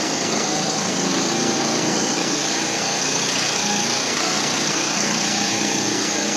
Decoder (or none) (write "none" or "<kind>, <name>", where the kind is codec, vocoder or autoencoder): codec, SNAC